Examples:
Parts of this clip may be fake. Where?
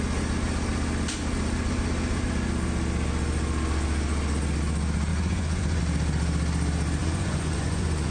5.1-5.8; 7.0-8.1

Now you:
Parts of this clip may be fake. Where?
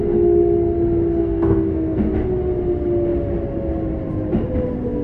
1.2-2.0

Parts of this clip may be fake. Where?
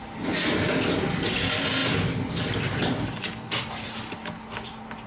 none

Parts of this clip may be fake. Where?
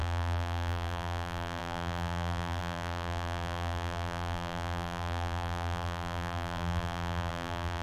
0.0-7.8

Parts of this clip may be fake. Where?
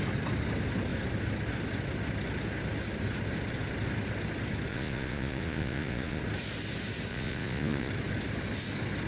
4.7-6.2; 7.1-7.9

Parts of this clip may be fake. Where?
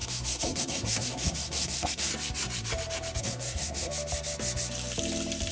0.0-2.1; 3.2-3.9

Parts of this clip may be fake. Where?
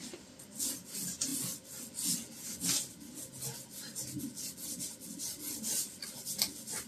none